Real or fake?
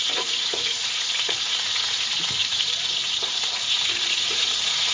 fake